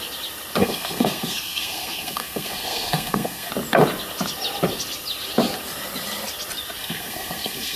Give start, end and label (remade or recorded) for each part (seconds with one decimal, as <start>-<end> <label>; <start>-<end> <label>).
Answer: 0.0-0.6 recorded; 0.6-3.5 remade; 3.5-6.8 recorded; 6.8-7.8 remade